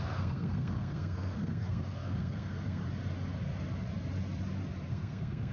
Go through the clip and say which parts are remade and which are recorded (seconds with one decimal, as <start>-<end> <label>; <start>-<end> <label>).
0.0-2.8 remade; 2.8-4.9 recorded; 4.9-5.5 remade